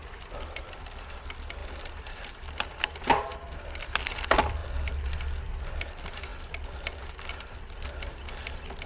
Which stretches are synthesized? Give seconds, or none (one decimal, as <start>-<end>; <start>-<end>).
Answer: none